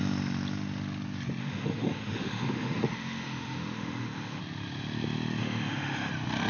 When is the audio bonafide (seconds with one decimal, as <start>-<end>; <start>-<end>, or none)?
0.0-1.4; 4.4-5.4; 6.1-6.5